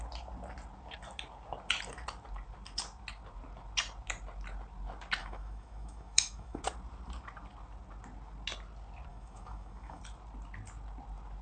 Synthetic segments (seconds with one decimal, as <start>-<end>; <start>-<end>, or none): 5.2-6.6; 9.1-10.0